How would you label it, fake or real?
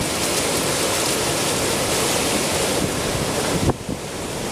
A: real